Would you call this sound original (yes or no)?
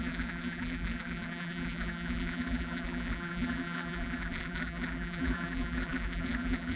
no